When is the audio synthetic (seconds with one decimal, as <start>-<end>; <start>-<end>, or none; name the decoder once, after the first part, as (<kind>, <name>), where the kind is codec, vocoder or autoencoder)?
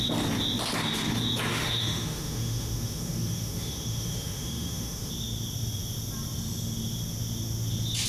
1.5-5.1 (autoencoder, DAC-VAE)